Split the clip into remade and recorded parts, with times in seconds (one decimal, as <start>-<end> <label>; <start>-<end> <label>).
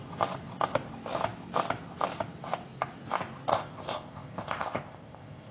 0.0-3.5 recorded; 3.5-5.5 remade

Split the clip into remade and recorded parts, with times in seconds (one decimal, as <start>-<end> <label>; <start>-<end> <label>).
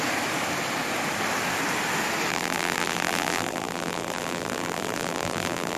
0.0-2.3 recorded; 2.3-5.8 remade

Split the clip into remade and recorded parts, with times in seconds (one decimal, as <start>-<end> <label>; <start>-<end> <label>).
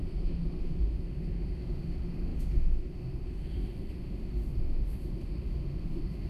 0.0-6.3 remade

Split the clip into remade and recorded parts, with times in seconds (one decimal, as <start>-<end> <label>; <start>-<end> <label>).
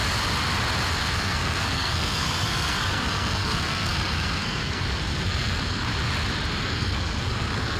0.0-1.0 recorded; 1.0-5.9 remade; 5.9-6.6 recorded; 6.6-7.8 remade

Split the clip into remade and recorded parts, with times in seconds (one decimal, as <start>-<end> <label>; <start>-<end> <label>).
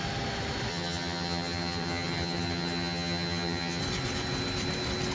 0.0-0.7 recorded; 0.7-3.8 remade; 3.8-5.1 recorded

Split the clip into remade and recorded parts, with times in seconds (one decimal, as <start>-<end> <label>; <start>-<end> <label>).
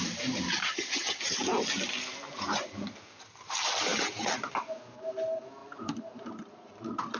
0.0-0.6 recorded; 0.6-1.2 remade; 1.2-7.2 recorded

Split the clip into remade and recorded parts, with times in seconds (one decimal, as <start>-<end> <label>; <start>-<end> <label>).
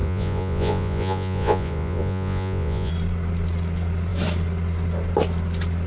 0.0-2.9 remade; 2.9-5.9 recorded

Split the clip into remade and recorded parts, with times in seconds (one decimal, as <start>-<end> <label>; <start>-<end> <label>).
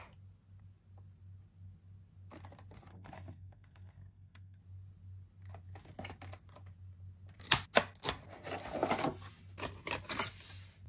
0.0-2.9 recorded; 2.9-4.6 remade; 4.6-10.9 recorded